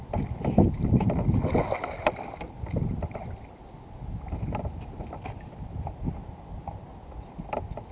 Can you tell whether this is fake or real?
real